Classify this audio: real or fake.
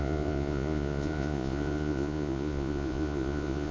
fake